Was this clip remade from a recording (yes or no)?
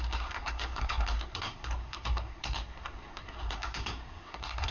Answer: yes